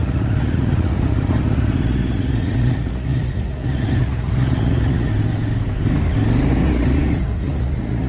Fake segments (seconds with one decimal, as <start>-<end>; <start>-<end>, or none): 0.0-5.1; 6.5-8.1